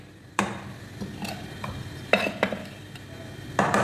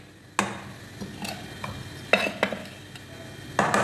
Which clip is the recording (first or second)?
second